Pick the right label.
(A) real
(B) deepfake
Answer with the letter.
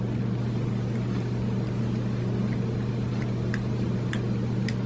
A